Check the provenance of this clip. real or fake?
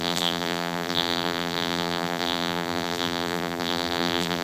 fake